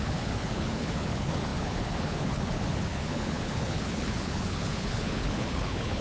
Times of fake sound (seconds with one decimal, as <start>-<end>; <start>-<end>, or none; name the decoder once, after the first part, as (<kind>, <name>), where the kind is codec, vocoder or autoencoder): 0.0-6.0 (codec, HILCodec)